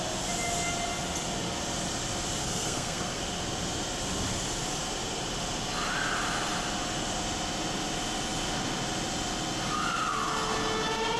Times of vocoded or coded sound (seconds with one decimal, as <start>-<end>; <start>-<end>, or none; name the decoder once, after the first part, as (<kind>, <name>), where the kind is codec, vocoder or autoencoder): 2.4-3.2 (codec, SNAC)